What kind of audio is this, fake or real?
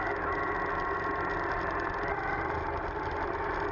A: real